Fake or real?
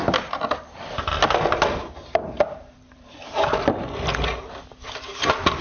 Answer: fake